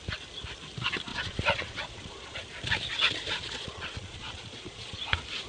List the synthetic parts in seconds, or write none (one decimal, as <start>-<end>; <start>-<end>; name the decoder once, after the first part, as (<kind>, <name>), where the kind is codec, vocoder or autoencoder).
1.1-2.4 (vocoder, Vocos); 2.9-5.0